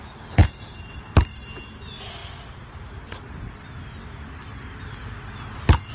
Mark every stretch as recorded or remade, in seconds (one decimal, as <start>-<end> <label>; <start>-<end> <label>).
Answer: 0.0-5.9 recorded